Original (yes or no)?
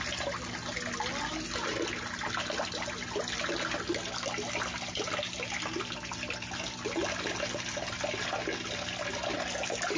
yes